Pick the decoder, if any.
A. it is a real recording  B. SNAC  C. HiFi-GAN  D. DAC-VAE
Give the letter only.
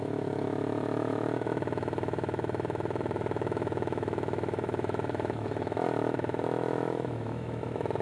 D